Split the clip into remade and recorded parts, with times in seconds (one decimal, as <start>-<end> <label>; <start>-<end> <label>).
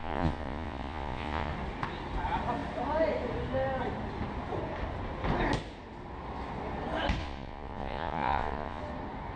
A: 0.0-1.5 remade; 1.5-7.2 recorded; 7.2-8.8 remade; 8.8-9.4 recorded